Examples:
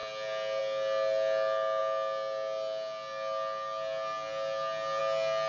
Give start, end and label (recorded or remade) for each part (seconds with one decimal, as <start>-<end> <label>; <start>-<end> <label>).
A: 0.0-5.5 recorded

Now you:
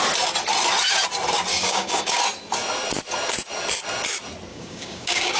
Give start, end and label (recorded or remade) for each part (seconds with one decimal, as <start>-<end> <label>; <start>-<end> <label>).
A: 0.0-1.5 recorded; 1.5-2.2 remade; 2.2-4.5 recorded; 4.5-5.4 remade

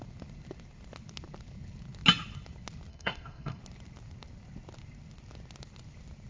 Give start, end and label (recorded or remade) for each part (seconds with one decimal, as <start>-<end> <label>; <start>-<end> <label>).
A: 0.0-2.9 recorded; 2.9-3.6 remade; 3.6-6.3 recorded